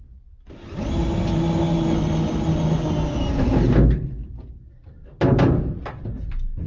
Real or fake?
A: real